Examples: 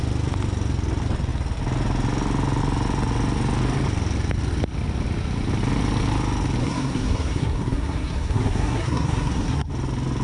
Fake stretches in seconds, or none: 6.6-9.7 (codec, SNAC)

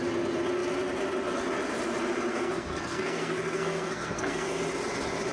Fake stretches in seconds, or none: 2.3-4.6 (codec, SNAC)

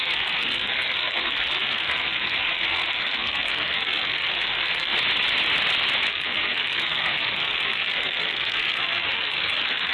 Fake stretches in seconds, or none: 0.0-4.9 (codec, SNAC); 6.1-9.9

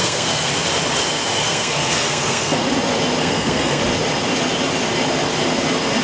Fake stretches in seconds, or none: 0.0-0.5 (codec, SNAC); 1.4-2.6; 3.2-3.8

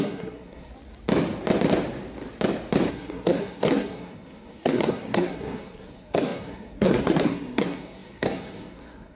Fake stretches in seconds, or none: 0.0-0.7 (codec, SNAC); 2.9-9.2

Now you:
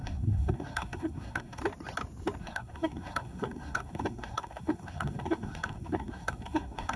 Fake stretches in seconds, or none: 0.0-1.6 (codec, SNAC); 2.4-7.0

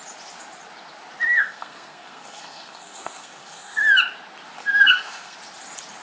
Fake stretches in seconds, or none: 1.3-3.8 (codec, SNAC); 4.6-5.4